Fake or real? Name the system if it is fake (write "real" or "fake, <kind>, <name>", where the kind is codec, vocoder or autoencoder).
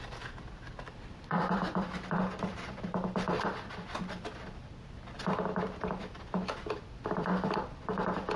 fake, vocoder, BigVGAN v2